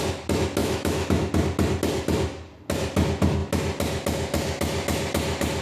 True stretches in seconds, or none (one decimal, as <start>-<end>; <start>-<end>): 0.0-0.6; 1.3-5.6